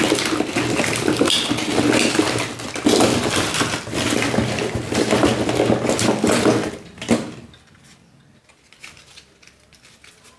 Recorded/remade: recorded